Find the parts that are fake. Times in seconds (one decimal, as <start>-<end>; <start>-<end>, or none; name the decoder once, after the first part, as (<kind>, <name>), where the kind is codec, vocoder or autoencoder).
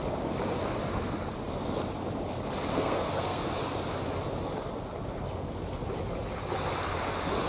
2.7-3.4 (codec, SNAC)